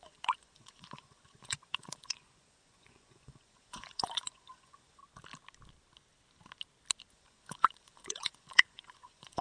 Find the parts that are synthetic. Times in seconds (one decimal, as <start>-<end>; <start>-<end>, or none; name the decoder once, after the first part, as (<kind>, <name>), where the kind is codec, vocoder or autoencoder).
0.0-5.0 (vocoder, Vocos); 7.1-9.4